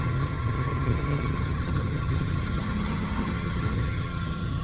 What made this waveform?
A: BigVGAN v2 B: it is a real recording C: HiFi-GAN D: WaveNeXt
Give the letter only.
C